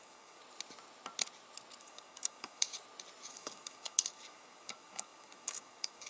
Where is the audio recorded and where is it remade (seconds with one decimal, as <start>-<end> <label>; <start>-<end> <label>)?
0.0-0.4 remade; 0.4-1.8 recorded; 1.8-2.7 remade; 2.7-3.3 recorded; 3.3-6.1 remade